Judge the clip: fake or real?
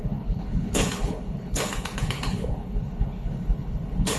fake